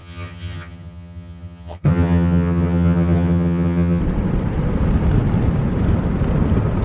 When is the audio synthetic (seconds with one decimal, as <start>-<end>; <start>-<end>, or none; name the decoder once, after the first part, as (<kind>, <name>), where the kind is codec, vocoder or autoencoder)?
0.0-4.0 (vocoder, HiFi-GAN)